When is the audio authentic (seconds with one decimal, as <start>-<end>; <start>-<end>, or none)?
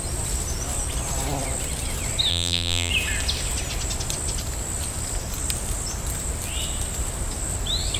0.0-2.3; 2.9-8.0